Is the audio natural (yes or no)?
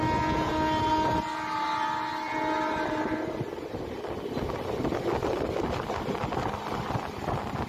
yes